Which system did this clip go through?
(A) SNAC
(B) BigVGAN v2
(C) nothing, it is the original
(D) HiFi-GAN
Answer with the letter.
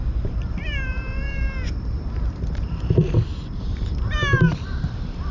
B